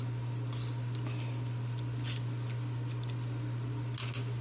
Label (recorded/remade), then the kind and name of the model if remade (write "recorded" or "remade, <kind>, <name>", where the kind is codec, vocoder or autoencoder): recorded